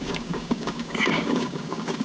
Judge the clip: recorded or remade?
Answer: remade